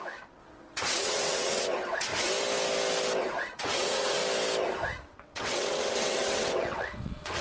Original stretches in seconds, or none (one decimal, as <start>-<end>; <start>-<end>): 2.1-3.3; 4.2-5.1